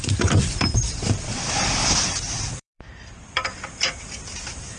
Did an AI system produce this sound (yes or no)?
yes